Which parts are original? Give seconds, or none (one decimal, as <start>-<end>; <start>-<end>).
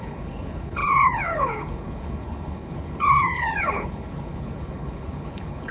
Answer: none